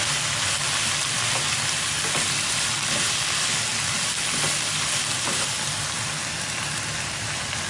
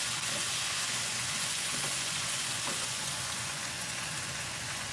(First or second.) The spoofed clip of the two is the second